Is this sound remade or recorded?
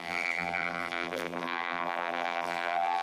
remade